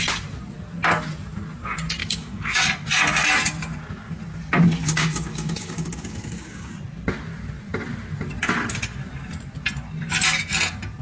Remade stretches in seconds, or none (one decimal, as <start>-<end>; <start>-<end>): 2.0-2.7; 4.9-6.7